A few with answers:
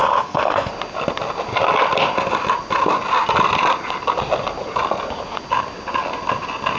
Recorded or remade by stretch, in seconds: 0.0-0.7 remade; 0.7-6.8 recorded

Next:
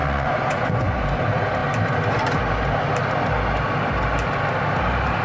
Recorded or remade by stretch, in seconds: 0.0-1.0 remade; 1.0-5.2 recorded

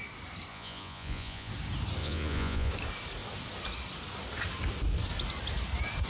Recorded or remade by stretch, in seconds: 0.0-0.5 recorded; 0.5-1.5 remade; 1.5-2.0 recorded; 2.0-2.7 remade; 2.7-6.1 recorded

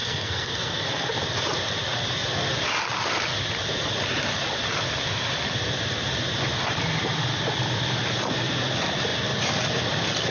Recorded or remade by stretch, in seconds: 0.0-0.8 remade; 0.8-10.3 recorded

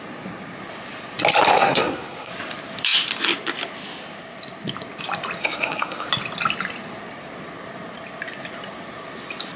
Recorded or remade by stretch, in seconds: 0.0-1.5 recorded; 1.5-2.3 remade; 2.3-5.4 recorded; 5.4-6.1 remade; 6.1-9.6 recorded

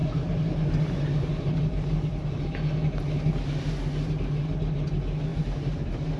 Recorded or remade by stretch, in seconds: 0.0-2.4 remade; 2.4-5.3 recorded; 5.3-6.2 remade